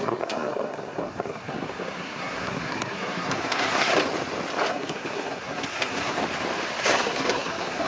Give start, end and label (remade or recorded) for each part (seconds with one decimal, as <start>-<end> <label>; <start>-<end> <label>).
0.0-3.9 remade; 3.9-4.7 recorded; 4.7-6.2 remade; 6.2-6.8 recorded; 6.8-7.9 remade